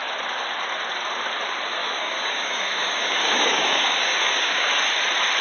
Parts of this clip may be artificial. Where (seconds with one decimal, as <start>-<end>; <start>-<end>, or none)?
1.8-4.7